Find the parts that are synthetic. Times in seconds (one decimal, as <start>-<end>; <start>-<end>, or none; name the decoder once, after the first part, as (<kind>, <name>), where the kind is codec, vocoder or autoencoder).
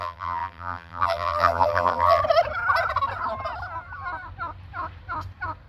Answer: 0.0-2.2 (vocoder, BigVGAN v2)